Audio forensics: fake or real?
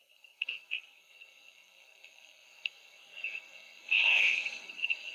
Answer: fake